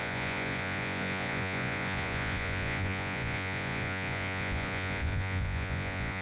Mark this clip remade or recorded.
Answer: remade